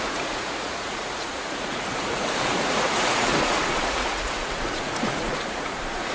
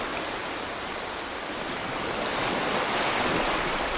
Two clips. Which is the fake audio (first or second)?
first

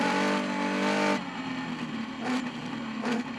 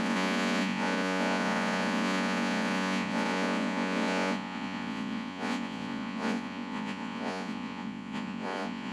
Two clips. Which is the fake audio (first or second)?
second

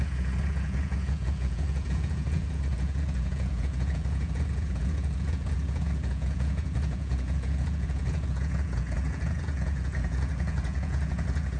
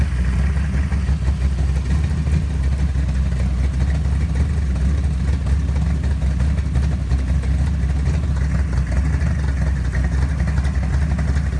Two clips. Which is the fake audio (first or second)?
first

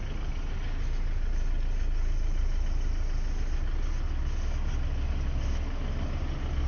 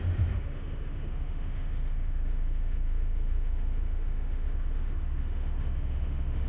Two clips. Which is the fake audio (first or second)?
second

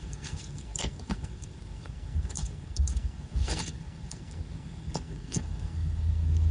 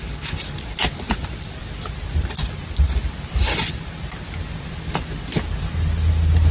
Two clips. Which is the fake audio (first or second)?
first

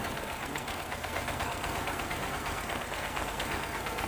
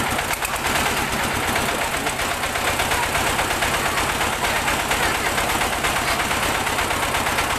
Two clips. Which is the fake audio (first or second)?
first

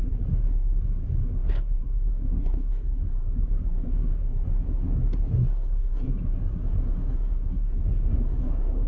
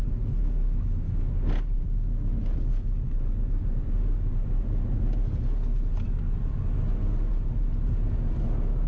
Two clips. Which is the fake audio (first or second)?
first